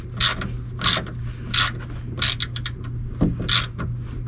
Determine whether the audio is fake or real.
real